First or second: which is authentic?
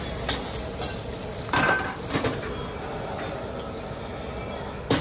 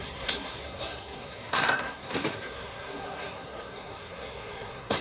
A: first